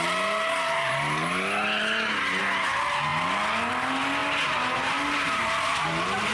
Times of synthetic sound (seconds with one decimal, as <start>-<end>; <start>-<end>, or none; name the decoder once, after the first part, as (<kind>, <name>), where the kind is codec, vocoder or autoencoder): none